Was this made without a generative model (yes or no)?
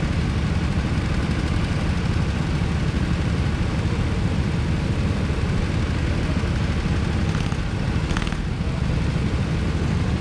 yes